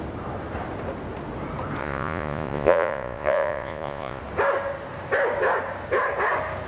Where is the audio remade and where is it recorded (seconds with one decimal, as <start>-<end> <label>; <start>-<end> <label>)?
0.0-1.8 recorded; 1.8-4.2 remade; 4.2-6.7 recorded